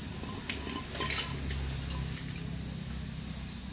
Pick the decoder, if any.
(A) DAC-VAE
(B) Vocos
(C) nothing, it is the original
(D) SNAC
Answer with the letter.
C